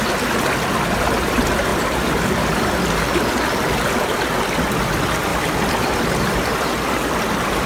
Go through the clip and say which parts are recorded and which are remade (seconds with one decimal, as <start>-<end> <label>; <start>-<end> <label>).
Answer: 0.0-5.3 recorded; 5.3-6.0 remade; 6.0-7.7 recorded